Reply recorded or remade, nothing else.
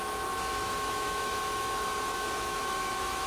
remade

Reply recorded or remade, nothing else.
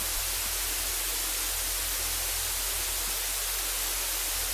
recorded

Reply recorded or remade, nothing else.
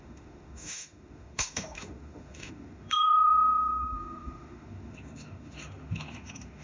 remade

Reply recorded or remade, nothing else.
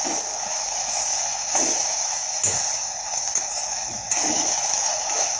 remade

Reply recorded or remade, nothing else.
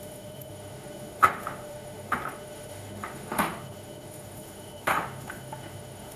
remade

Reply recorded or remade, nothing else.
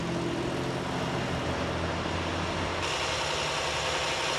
recorded